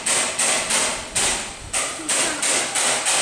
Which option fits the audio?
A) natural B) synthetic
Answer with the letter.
A